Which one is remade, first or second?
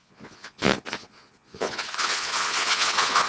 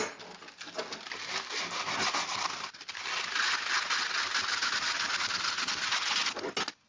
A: first